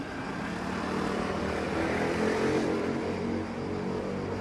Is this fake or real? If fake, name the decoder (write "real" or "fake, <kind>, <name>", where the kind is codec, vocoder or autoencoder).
real